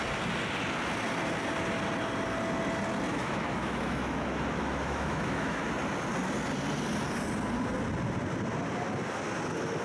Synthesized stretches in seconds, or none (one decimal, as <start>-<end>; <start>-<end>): 3.1-5.7